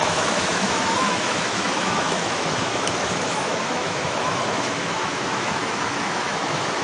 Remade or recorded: remade